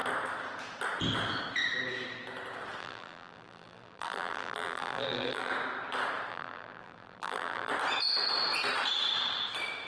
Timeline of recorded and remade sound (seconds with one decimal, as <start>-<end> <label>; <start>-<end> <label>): 0.0-2.8 recorded; 2.8-5.5 remade; 5.5-6.3 recorded; 6.3-7.7 remade; 7.7-9.9 recorded